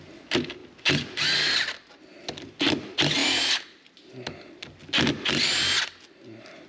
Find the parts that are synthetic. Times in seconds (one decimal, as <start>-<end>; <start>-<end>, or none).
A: none